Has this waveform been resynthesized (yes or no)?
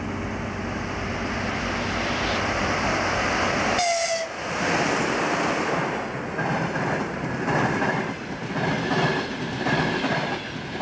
no